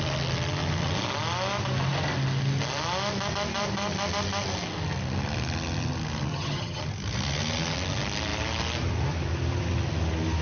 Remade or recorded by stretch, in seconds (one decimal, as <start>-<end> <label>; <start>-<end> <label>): 0.0-6.3 recorded; 6.3-6.8 remade; 6.8-10.4 recorded